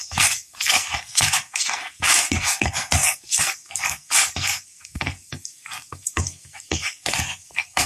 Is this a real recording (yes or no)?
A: no